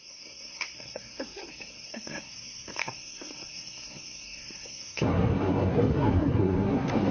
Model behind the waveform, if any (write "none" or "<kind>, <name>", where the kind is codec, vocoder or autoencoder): codec, SNAC